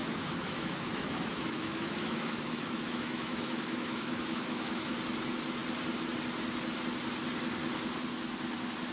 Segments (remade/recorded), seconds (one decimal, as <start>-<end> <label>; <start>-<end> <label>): 0.0-5.0 remade; 5.0-8.9 recorded